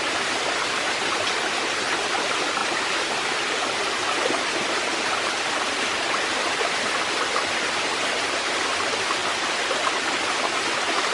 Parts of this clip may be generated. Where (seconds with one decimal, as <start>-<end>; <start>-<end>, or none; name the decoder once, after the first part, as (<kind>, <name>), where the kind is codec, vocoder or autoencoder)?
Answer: none